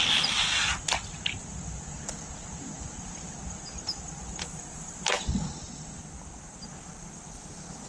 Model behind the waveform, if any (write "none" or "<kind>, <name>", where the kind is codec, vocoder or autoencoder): none